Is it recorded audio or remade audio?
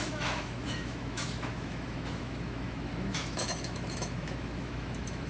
remade